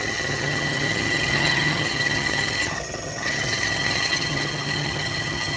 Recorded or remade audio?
remade